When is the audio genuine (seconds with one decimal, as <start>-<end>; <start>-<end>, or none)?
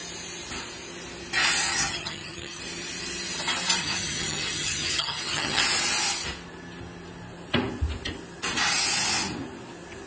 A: 0.0-1.7; 2.6-3.8; 5.6-10.1